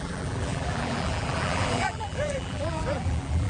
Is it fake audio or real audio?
fake